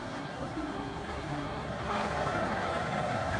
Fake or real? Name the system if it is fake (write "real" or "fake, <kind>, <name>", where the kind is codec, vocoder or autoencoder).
fake, codec, SNAC